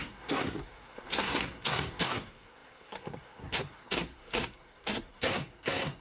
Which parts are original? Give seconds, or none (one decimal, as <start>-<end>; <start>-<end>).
none